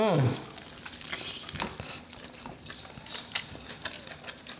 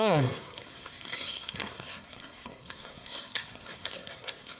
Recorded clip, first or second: first